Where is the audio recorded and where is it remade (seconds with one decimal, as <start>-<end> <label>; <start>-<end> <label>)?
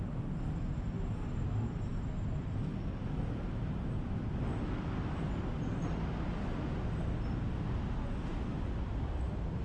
0.0-9.6 recorded